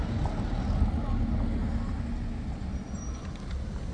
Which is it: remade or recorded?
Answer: recorded